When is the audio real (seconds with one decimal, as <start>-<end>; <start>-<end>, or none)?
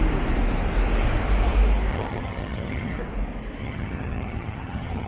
0.0-1.9; 3.0-3.6